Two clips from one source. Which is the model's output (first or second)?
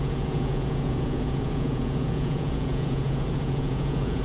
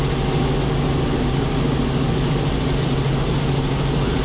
first